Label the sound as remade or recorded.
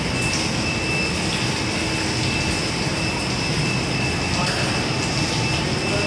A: recorded